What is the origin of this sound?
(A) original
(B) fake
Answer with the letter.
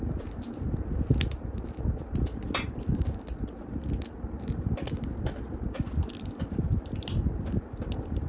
A